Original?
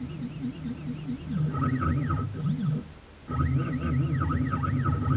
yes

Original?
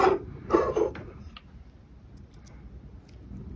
yes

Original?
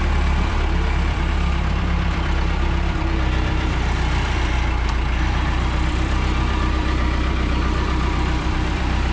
no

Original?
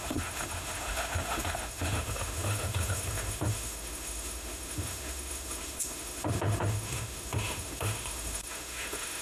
no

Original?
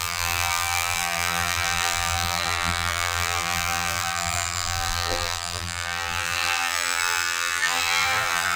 no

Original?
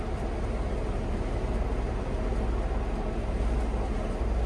yes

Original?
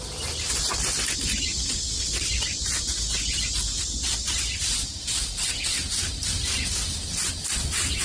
yes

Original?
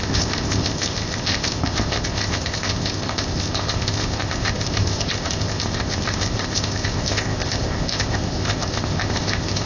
no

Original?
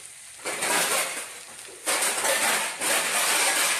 no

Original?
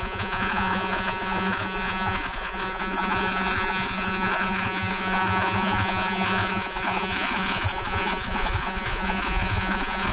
no